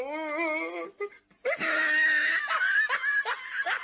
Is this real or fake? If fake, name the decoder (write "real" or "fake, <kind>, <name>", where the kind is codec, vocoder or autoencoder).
real